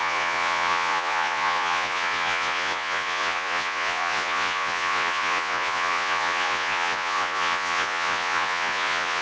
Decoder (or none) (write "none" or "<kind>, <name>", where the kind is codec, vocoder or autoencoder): vocoder, Vocos